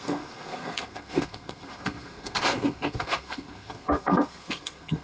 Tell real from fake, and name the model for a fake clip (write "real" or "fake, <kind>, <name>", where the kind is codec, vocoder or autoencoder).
fake, codec, SNAC